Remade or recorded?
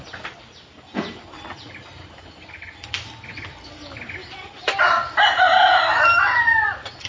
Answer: remade